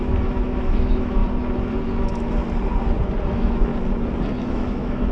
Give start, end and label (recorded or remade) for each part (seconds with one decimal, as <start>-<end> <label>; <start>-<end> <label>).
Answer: 0.0-1.2 remade; 1.2-2.0 recorded; 2.0-2.4 remade; 2.4-3.3 recorded; 3.3-3.7 remade; 3.7-4.5 recorded; 4.5-5.1 remade

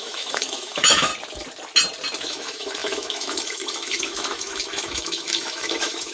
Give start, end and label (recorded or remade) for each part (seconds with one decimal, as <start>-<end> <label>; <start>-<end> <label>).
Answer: 0.0-1.1 remade; 1.1-2.2 recorded; 2.2-6.1 remade

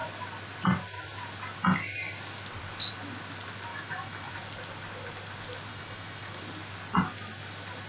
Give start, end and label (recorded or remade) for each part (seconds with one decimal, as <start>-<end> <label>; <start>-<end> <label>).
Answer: 0.0-3.7 recorded; 3.7-4.3 remade; 4.3-5.7 recorded; 5.7-6.4 remade; 6.4-7.9 recorded

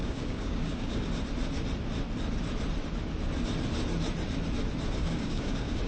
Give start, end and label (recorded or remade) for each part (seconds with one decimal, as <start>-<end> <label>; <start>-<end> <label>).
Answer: 0.0-1.1 remade; 1.1-5.0 recorded; 5.0-5.9 remade

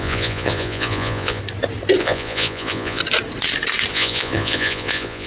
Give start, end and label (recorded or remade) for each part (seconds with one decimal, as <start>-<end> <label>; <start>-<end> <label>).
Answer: 0.0-1.4 remade; 1.4-2.0 recorded; 2.0-3.0 remade; 3.0-3.9 recorded; 3.9-5.3 remade

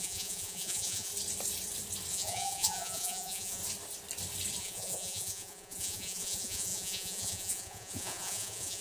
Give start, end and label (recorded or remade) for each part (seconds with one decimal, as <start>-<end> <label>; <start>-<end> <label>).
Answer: 0.0-1.1 remade; 1.1-2.1 recorded; 2.1-3.6 remade; 3.6-4.6 recorded; 4.6-8.8 remade

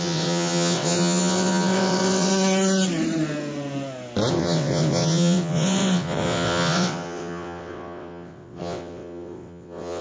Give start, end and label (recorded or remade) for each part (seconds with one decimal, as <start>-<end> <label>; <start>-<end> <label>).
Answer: 0.0-2.3 remade; 2.3-4.3 recorded; 4.3-10.0 remade